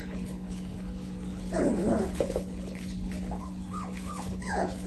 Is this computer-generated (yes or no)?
yes